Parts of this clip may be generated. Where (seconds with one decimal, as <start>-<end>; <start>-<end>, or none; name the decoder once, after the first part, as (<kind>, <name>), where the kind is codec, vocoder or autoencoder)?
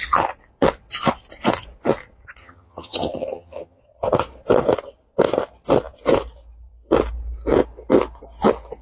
2.4-3.8 (vocoder, HiFi-GAN)